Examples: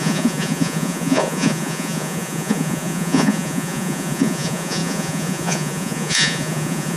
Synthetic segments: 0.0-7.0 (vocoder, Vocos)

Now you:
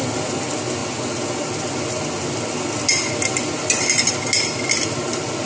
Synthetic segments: none

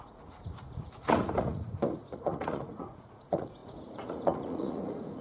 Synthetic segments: 0.0-5.2 (vocoder, Vocos)

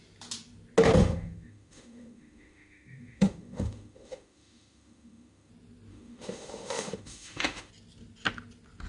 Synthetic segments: 1.0-5.5 (autoencoder, DAC-VAE); 5.9-7.7

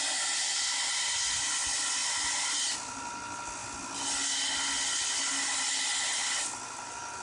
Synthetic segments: none

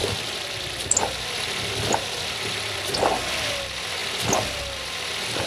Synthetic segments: none

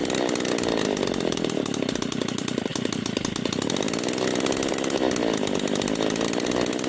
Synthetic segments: 0.0-2.7 (vocoder, BigVGAN v2); 4.7-6.9

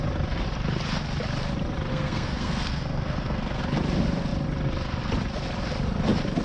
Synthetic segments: 1.9-3.6 (codec, SNAC)